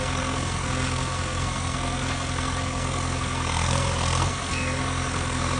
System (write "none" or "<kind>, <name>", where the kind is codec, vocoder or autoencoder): codec, SNAC